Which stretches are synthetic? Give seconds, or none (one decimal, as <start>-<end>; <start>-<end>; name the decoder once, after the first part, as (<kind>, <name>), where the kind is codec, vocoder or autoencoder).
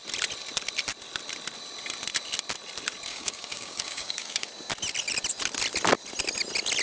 3.1-4.5 (codec, DAC)